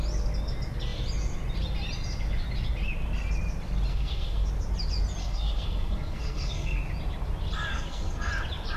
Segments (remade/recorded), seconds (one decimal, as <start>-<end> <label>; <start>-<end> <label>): 0.0-3.9 recorded; 3.9-4.5 remade; 4.5-5.2 recorded; 5.2-6.8 remade; 6.8-7.7 recorded; 7.7-8.3 remade; 8.3-8.8 recorded